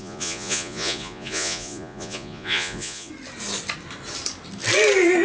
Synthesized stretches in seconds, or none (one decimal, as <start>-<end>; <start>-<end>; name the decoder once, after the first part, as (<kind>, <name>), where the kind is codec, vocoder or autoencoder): 0.0-3.1 (vocoder, Vocos)